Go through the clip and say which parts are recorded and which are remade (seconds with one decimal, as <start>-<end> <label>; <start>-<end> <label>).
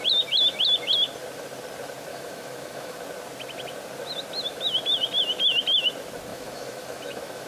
0.0-2.1 recorded; 2.1-3.0 remade; 3.0-6.3 recorded; 6.3-7.5 remade